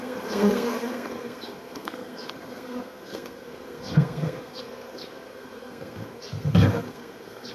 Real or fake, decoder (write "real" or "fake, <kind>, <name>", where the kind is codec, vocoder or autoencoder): fake, codec, SNAC